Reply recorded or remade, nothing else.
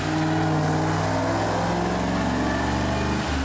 recorded